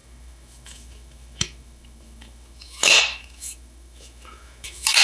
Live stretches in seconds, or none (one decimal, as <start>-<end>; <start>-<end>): none